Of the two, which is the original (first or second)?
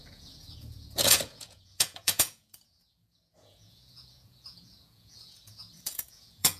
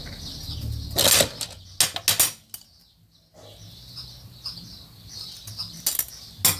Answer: second